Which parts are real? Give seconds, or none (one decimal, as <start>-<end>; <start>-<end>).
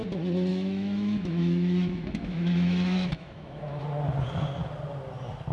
0.0-0.5; 3.8-5.5